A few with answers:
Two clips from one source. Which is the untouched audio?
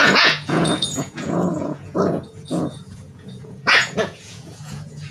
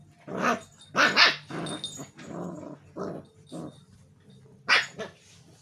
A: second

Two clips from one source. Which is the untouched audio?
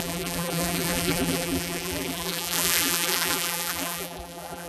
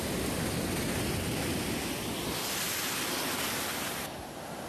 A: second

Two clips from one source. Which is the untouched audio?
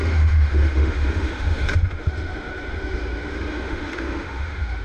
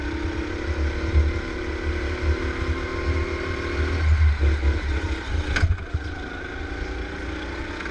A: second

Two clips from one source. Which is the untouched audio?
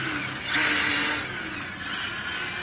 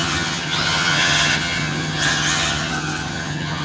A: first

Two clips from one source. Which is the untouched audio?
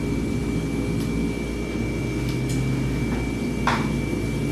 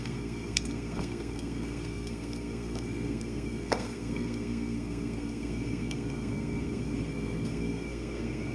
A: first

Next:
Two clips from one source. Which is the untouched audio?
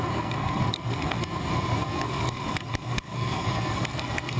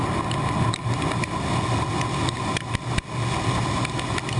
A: second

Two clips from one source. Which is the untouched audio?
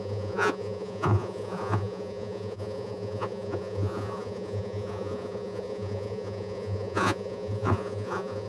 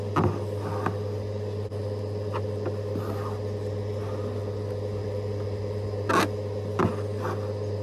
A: second